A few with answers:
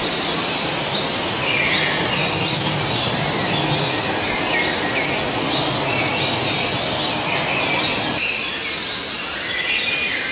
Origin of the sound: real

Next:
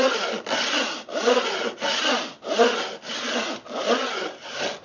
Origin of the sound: real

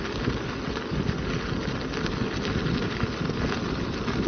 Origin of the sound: real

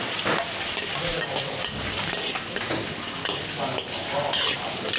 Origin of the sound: fake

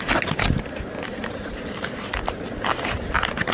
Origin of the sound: real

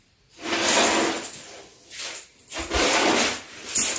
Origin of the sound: real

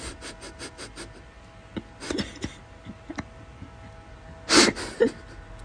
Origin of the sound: real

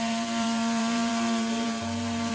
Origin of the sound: fake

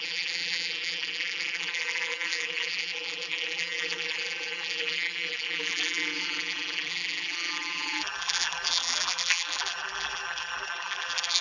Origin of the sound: fake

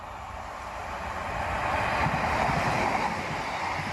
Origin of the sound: fake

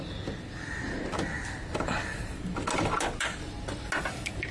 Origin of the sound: real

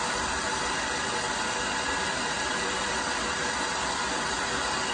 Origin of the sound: fake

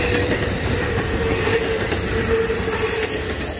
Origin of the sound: real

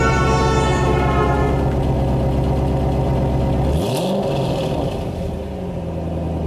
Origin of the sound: real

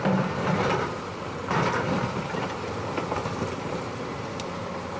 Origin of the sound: fake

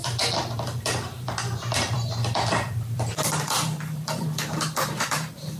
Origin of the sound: fake